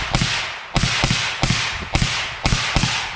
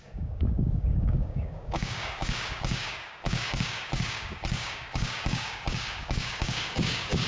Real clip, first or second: first